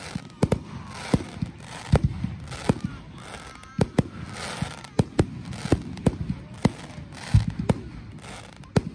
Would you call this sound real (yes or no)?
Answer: yes